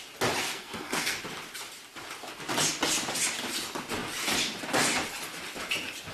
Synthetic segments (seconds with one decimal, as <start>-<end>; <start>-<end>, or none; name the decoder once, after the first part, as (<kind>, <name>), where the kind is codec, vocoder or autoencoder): 0.4-1.2 (codec, SNAC)